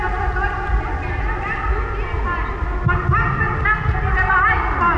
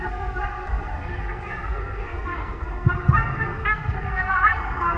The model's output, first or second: second